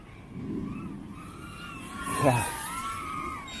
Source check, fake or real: real